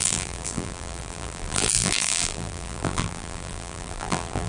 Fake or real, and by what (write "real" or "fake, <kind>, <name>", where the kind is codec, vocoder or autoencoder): fake, vocoder, BigVGAN v2